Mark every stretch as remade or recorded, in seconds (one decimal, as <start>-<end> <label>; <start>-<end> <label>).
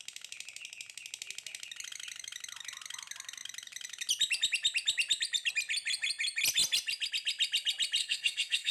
0.0-8.0 recorded; 8.0-8.7 remade